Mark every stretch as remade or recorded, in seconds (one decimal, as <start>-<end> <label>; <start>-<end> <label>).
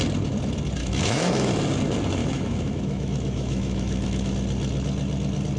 0.0-0.8 recorded; 0.8-1.5 remade; 1.5-2.2 recorded; 2.2-4.3 remade; 4.3-5.6 recorded